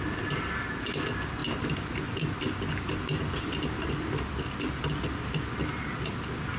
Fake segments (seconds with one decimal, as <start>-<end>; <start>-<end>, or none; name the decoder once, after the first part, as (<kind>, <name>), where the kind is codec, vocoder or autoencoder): none